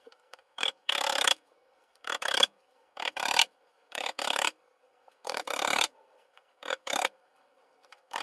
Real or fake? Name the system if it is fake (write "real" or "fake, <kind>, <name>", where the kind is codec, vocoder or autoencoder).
fake, codec, SNAC